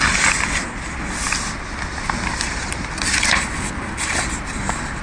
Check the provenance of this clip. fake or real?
real